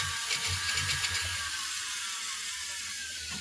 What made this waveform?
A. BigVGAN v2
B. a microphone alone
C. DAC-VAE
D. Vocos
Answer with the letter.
A